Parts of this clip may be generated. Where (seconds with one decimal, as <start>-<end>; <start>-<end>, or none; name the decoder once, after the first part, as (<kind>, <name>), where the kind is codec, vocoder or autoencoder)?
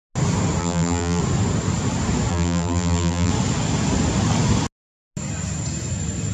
0.6-1.2 (vocoder, BigVGAN v2); 2.3-3.3